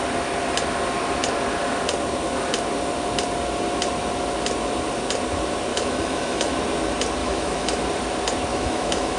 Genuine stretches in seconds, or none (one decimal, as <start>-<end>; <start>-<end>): 0.0-5.7; 6.5-7.2; 7.8-8.5